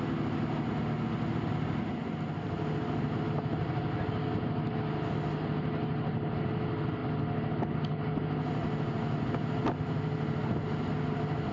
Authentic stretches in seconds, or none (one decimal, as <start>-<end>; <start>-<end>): 0.0-11.5